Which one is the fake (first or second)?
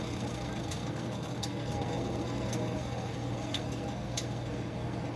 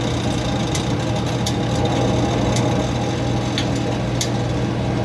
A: first